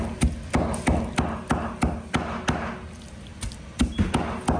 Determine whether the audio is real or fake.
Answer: real